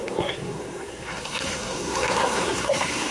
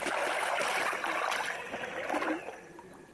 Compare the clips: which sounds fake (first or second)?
first